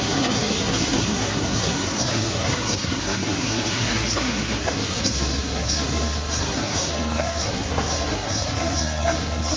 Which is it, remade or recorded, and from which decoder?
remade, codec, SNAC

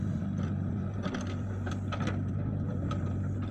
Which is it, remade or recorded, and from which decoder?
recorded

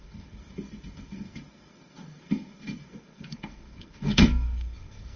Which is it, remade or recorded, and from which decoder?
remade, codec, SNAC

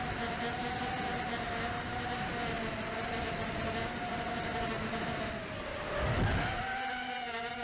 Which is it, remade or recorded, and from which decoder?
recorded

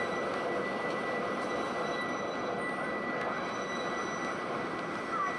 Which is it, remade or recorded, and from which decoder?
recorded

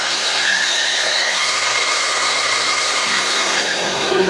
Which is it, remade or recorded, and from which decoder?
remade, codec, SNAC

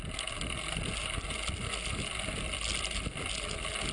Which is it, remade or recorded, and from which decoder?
recorded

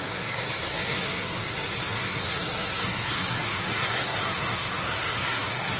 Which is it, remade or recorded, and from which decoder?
remade, codec, SNAC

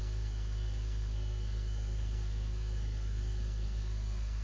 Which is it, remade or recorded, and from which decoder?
remade, codec, SNAC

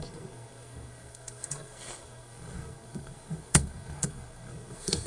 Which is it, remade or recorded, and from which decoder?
remade, codec, SNAC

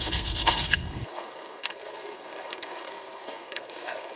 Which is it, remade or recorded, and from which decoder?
remade, codec, SNAC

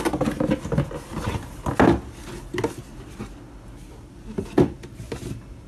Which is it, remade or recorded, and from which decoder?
recorded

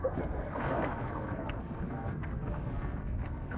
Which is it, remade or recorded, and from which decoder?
remade, codec, SNAC